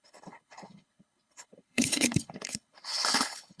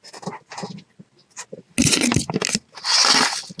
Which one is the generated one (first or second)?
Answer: first